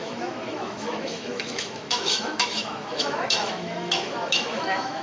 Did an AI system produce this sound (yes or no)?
yes